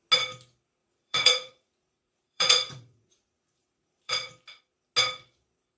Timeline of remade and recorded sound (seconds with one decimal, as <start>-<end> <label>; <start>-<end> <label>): 0.0-0.8 recorded; 0.8-4.3 remade; 4.3-5.8 recorded